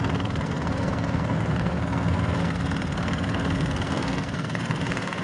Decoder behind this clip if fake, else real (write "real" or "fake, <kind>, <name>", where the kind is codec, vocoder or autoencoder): fake, codec, SNAC